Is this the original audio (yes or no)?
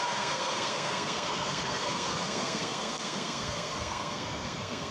no